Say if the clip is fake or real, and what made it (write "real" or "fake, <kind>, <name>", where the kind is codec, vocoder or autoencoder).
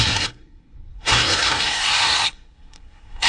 fake, codec, SNAC